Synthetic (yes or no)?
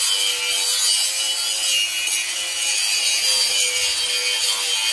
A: no